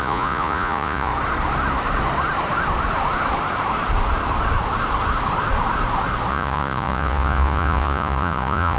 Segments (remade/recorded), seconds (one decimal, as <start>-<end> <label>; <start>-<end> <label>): 0.0-1.1 remade; 1.1-6.3 recorded; 6.3-8.8 remade

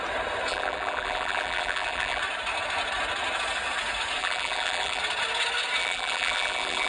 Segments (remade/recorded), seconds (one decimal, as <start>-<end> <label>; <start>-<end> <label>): 0.0-0.5 recorded; 0.5-2.2 remade; 2.2-4.2 recorded; 4.2-5.0 remade; 5.0-5.8 recorded; 5.8-6.9 remade